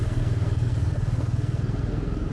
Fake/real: fake